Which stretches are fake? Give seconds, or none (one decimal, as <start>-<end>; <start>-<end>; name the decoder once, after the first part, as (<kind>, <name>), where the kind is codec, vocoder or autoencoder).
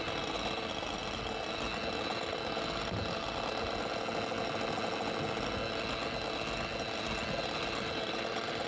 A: none